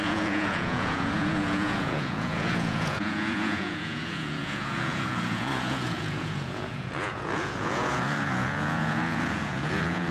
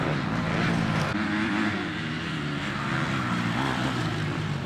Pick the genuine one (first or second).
second